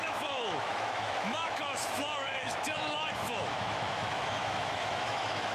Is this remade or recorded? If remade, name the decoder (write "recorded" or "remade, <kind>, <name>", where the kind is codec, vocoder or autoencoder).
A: remade, autoencoder, DAC-VAE